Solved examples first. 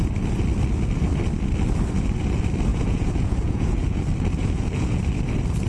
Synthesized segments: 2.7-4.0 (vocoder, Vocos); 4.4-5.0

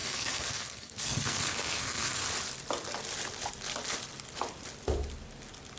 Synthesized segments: 0.0-2.2 (codec, SNAC)

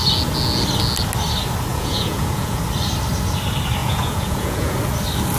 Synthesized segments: 1.7-2.6 (vocoder, Vocos); 3.8-4.8

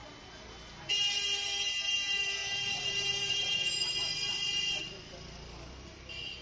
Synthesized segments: 2.4-3.9 (vocoder, BigVGAN v2)